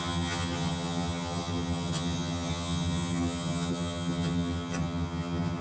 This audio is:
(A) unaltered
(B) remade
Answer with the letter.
B